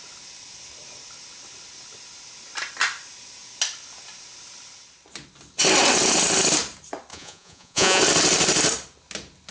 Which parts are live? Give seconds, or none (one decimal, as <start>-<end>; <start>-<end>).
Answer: 0.0-7.1; 8.0-9.5